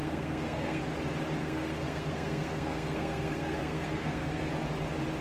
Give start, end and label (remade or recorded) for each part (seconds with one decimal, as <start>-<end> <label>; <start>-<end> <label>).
0.0-0.8 remade; 0.8-1.4 recorded; 1.4-4.5 remade; 4.5-5.2 recorded